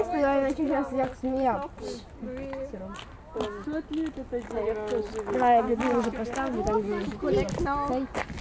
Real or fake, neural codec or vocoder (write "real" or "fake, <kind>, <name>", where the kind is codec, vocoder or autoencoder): real